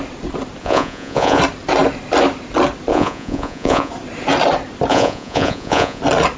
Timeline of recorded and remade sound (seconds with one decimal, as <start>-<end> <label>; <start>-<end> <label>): 0.0-0.6 recorded; 0.6-1.4 remade; 1.4-2.9 recorded; 2.9-3.9 remade; 3.9-4.9 recorded; 4.9-6.0 remade; 6.0-6.4 recorded